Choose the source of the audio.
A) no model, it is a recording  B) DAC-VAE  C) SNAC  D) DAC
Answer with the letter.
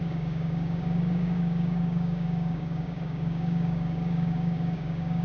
D